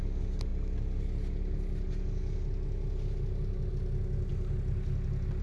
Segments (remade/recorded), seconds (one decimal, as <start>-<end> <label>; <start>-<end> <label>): 0.0-5.4 recorded